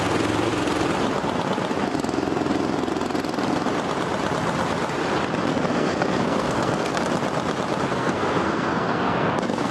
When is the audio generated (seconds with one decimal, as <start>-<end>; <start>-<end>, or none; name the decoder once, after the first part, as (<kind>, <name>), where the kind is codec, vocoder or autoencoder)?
5.5-7.0 (codec, SNAC); 7.9-9.7

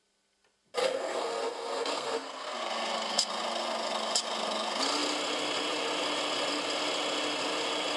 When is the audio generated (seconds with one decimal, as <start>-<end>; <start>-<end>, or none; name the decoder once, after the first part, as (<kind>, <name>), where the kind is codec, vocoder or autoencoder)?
0.8-3.3 (codec, SNAC)

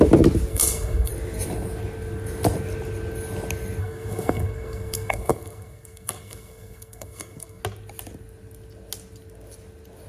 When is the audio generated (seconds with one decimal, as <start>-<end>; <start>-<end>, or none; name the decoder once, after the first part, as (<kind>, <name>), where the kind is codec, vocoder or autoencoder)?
0.5-1.1 (codec, SNAC); 3.8-7.6

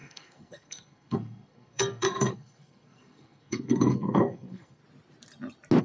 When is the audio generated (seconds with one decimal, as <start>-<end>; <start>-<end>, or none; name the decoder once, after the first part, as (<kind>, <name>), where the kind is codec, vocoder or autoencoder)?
0.0-4.8 (codec, SNAC)

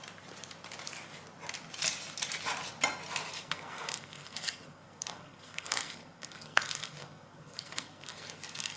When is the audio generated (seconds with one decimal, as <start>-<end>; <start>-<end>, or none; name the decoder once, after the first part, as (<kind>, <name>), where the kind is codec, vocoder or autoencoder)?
3.3-8.8 (codec, SNAC)